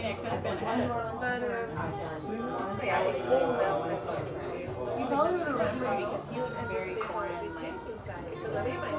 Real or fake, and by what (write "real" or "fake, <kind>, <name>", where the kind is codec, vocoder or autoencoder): real